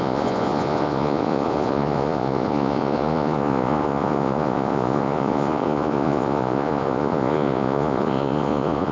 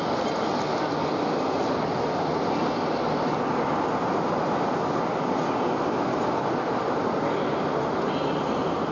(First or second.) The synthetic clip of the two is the first